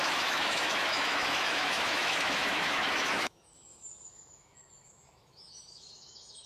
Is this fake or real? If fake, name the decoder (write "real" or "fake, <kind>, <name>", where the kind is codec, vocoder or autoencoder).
fake, autoencoder, DAC-VAE